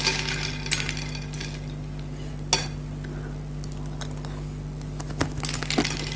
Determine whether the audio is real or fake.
real